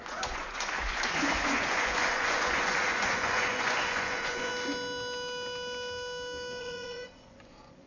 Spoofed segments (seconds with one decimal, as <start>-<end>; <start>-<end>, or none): 0.0-4.5; 6.6-7.9